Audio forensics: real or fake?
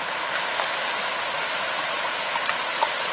real